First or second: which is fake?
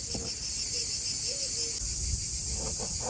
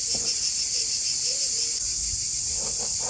second